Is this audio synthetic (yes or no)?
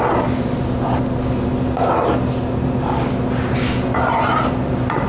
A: no